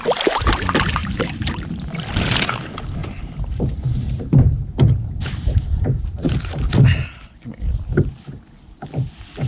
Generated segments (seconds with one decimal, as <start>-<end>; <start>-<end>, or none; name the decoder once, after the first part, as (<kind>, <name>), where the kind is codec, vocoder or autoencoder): 1.0-1.9 (vocoder, BigVGAN v2); 3.0-6.3